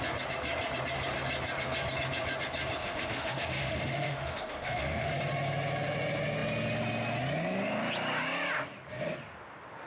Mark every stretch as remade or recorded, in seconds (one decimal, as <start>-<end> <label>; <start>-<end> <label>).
0.0-2.8 recorded; 2.8-5.1 remade; 5.1-9.9 recorded